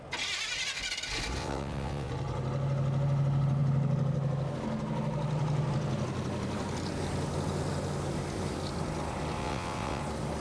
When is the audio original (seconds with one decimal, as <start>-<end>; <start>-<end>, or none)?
0.0-1.4; 2.1-9.4; 10.0-10.4